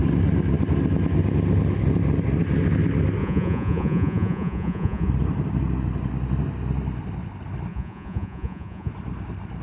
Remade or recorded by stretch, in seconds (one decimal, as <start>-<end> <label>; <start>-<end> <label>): 0.0-3.2 recorded; 3.2-5.1 remade; 5.1-7.7 recorded; 7.7-8.9 remade; 8.9-9.6 recorded